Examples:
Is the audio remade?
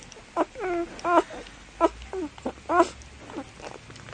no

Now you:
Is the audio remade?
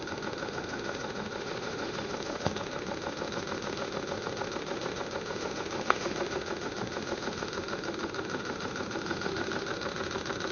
yes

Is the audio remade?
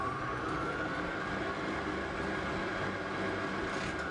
no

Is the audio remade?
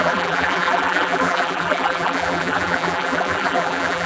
yes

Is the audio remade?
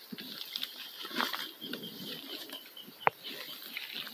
yes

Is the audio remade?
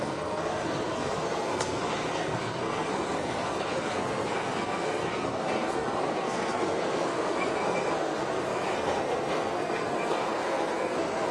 yes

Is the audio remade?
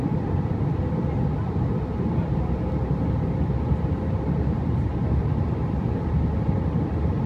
no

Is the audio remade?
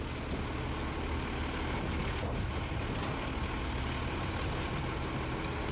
no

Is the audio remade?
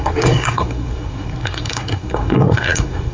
yes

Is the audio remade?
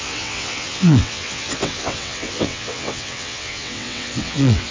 yes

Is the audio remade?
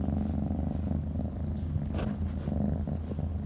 no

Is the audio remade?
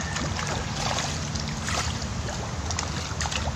no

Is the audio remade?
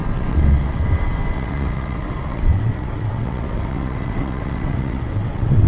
yes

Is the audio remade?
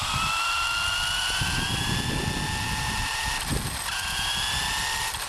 no